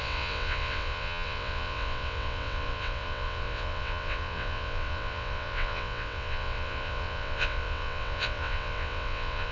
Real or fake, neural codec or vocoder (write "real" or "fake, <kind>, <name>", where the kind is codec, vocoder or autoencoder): fake, vocoder, WaveNeXt